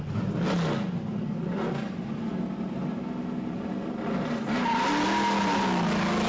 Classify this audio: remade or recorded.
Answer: recorded